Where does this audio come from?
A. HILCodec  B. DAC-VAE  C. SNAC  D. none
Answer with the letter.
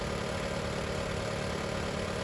D